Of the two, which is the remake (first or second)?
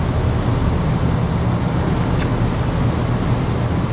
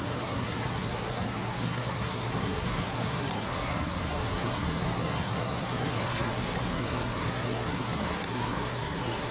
second